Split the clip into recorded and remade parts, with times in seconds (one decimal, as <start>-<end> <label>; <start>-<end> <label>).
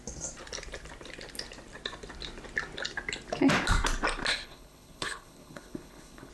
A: 0.0-4.3 recorded; 4.3-6.3 remade